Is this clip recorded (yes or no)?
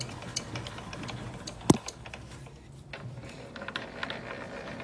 yes